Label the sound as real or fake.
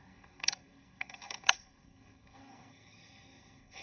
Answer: fake